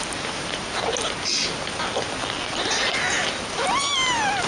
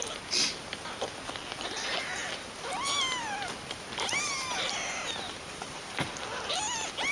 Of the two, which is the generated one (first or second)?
second